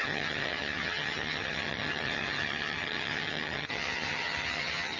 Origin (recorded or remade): remade